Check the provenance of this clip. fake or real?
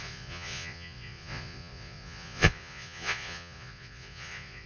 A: fake